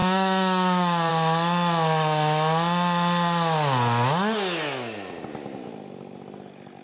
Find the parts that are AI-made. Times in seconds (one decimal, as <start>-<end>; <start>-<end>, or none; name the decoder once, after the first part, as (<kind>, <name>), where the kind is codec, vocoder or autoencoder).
0.0-1.1 (codec, DAC)